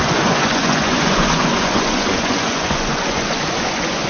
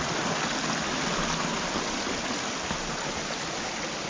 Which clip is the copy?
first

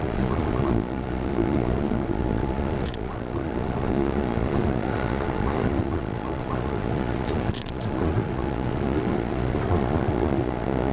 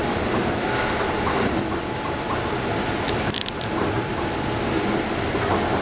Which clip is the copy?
first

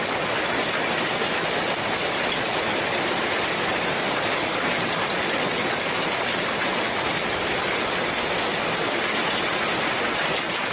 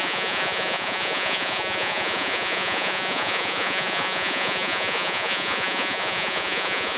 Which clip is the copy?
second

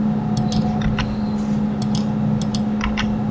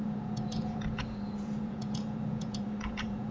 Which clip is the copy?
second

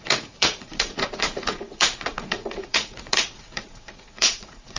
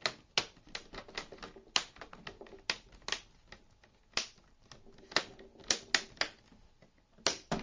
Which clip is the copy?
first